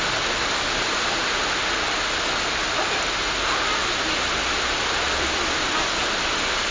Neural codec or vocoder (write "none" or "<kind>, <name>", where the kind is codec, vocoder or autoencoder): none